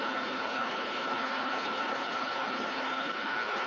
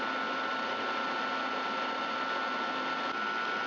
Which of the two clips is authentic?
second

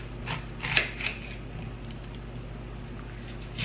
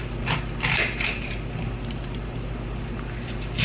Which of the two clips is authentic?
first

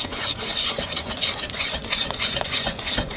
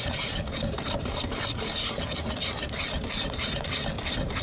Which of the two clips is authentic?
second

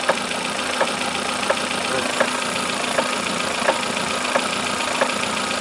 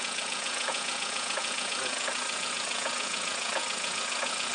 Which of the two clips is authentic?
first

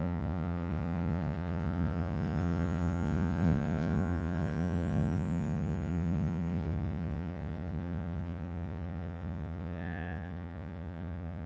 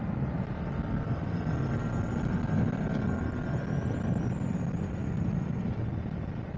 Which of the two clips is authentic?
second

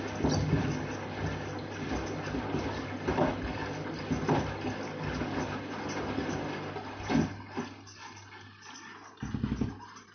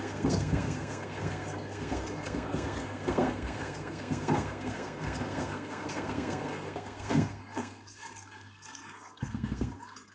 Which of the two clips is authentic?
first